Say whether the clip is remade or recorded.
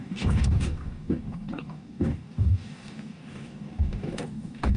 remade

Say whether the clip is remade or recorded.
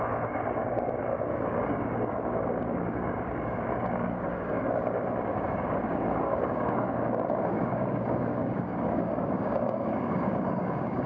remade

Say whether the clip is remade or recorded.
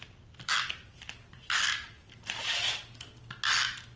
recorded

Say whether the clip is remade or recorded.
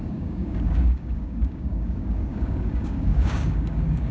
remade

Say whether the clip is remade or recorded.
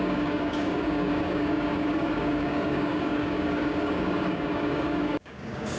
remade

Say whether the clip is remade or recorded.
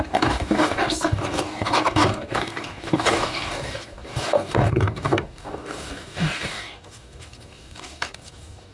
remade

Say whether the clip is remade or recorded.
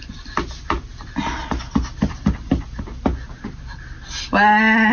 recorded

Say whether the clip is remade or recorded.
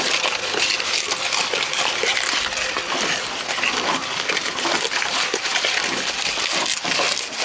recorded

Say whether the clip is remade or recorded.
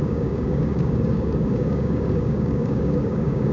remade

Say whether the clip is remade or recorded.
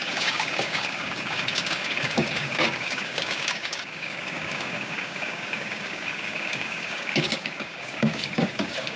remade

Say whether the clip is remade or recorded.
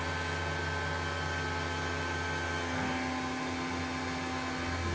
recorded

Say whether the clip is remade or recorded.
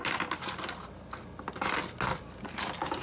recorded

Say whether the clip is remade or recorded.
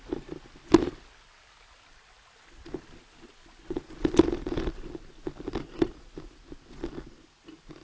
recorded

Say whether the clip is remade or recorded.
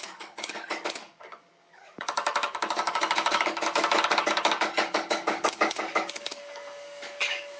remade